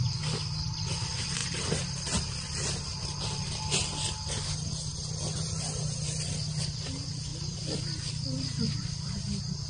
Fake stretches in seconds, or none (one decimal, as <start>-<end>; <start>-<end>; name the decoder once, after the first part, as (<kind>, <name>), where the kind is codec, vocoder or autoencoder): none